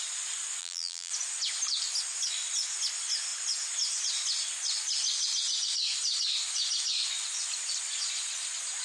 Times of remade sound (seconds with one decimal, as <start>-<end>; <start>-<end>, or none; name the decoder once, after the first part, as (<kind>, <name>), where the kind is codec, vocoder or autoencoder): 0.6-1.1 (vocoder, BigVGAN v2)